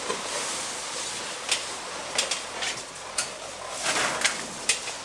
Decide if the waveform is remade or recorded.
recorded